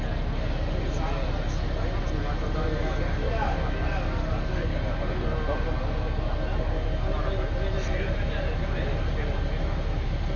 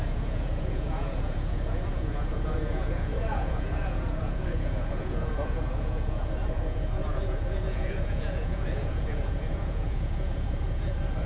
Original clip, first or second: first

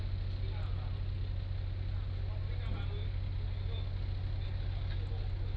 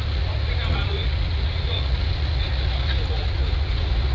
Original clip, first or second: first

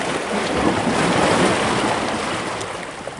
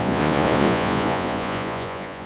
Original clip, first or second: first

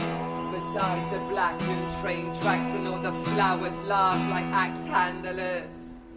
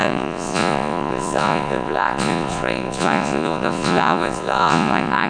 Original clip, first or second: first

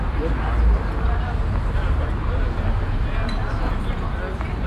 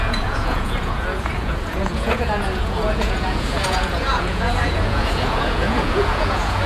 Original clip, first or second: first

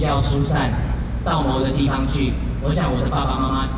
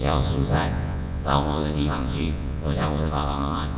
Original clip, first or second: first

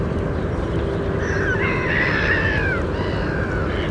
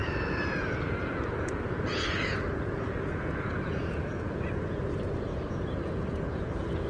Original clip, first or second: first